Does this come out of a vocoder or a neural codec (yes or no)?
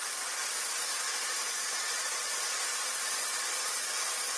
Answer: yes